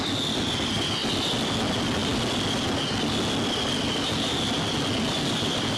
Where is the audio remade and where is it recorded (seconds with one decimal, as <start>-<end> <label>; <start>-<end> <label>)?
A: 0.0-5.8 recorded

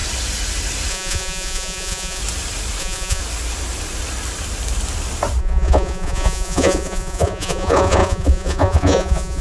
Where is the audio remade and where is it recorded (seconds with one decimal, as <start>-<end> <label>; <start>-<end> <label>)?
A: 0.0-0.9 recorded; 0.9-2.2 remade; 2.2-2.8 recorded; 2.8-3.2 remade; 3.2-5.4 recorded; 5.4-9.4 remade

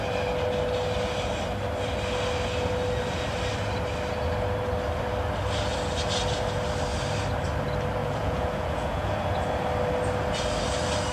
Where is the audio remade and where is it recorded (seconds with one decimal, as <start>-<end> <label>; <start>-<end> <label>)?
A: 0.0-8.0 recorded; 8.0-9.1 remade; 9.1-11.1 recorded